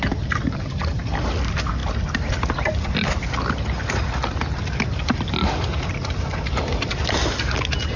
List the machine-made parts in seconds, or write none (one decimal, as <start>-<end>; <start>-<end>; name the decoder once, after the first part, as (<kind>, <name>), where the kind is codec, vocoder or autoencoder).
0.4-1.0 (vocoder, BigVGAN v2)